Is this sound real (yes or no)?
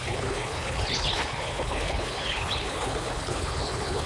no